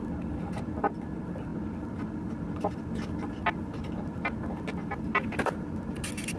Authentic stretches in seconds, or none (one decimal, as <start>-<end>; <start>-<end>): 0.0-6.4

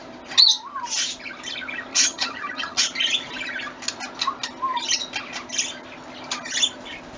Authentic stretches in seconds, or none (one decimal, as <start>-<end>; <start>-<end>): 0.0-1.9; 2.8-7.2

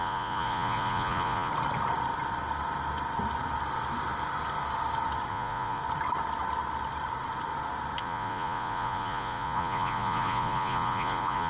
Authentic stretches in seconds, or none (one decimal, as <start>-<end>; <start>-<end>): 1.5-5.3; 5.8-8.0

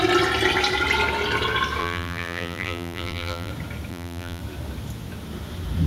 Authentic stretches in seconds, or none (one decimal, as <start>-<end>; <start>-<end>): 0.0-1.8; 3.5-3.9; 4.4-5.9

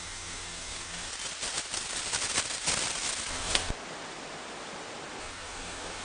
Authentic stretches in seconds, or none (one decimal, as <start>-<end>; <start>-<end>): 1.1-3.3; 3.7-5.2